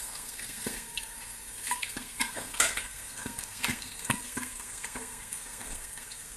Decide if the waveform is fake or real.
fake